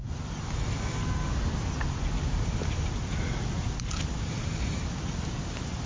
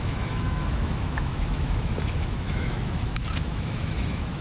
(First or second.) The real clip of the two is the first